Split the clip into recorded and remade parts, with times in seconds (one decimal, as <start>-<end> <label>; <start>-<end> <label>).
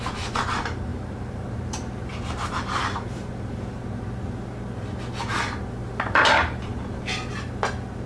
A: 0.0-0.9 recorded; 0.9-3.3 remade; 3.3-8.1 recorded